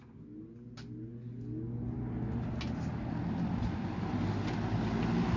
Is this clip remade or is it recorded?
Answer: recorded